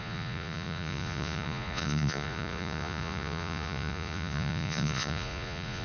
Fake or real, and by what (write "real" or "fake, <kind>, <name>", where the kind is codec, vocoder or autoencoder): fake, vocoder, Vocos